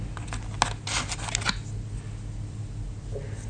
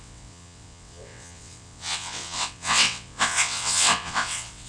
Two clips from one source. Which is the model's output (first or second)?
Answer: second